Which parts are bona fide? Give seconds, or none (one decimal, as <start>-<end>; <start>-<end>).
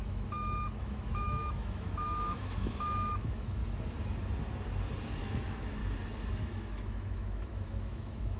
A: 3.6-5.2; 5.8-6.4